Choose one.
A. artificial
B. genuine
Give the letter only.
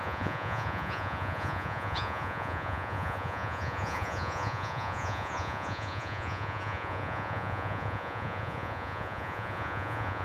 A